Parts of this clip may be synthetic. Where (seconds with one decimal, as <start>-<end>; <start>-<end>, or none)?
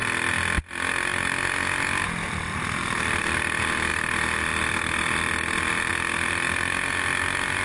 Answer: none